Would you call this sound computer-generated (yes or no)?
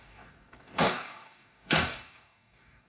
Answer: yes